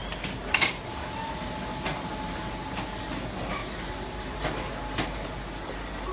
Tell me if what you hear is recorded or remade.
recorded